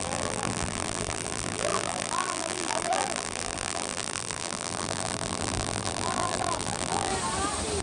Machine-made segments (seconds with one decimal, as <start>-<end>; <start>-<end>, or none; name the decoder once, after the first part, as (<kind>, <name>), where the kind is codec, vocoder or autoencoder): 0.0-7.1 (vocoder, BigVGAN v2)

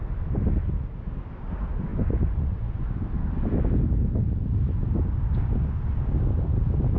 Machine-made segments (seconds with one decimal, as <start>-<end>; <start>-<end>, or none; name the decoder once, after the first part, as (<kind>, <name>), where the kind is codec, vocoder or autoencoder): 1.9-2.9 (vocoder, Vocos)